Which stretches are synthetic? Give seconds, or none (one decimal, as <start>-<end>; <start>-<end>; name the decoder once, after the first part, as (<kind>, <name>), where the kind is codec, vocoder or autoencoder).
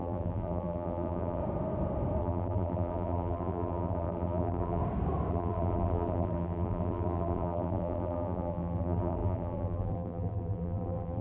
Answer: 0.0-1.4 (vocoder, BigVGAN v2); 2.2-4.8; 5.3-11.2